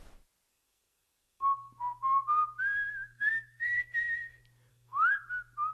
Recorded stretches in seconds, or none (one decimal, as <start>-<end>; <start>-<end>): 0.0-0.5; 1.7-3.0; 3.8-4.7; 5.2-5.7